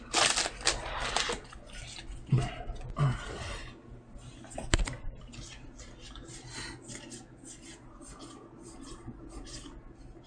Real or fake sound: real